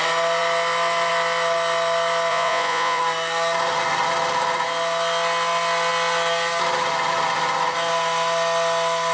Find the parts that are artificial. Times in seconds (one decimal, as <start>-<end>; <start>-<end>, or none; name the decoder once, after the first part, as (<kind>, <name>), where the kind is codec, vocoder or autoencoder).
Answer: 2.3-3.0 (vocoder, Vocos)